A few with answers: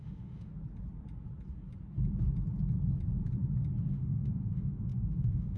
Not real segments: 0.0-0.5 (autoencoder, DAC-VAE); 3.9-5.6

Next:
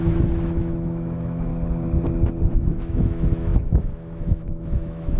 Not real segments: 0.0-1.5 (autoencoder, DAC-VAE); 2.5-5.2

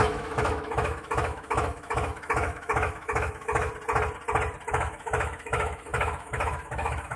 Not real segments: 0.0-3.7 (autoencoder, DAC-VAE); 4.7-7.2